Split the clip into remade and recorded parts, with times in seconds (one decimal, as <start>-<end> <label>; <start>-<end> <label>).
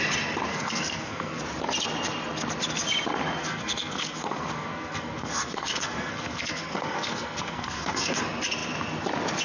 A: 0.0-0.5 recorded; 0.5-1.4 remade; 1.4-3.4 recorded; 3.4-8.2 remade; 8.2-9.4 recorded